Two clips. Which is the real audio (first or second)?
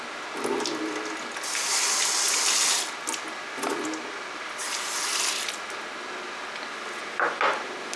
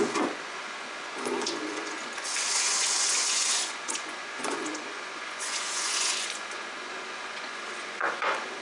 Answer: first